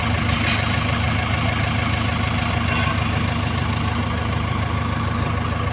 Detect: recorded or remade recorded